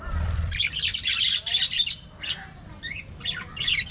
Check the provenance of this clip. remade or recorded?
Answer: remade